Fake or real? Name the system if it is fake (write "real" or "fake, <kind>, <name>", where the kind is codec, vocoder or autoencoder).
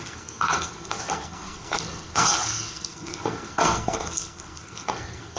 fake, codec, SNAC